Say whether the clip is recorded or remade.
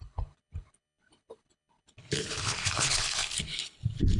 remade